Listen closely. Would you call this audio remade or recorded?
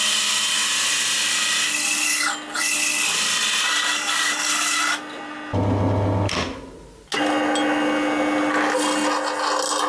recorded